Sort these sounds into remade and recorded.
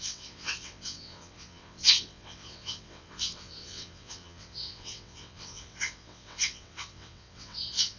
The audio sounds remade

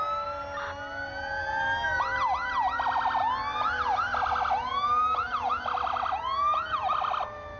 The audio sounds recorded